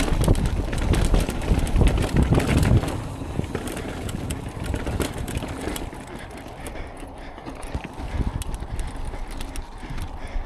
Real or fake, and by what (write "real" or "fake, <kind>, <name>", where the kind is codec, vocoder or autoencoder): real